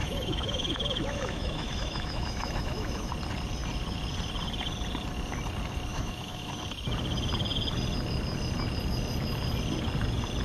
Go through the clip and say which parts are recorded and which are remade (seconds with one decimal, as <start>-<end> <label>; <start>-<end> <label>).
0.0-3.1 remade; 3.1-5.9 recorded; 5.9-6.5 remade; 6.5-10.4 recorded